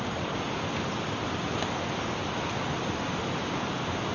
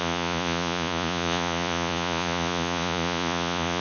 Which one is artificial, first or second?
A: second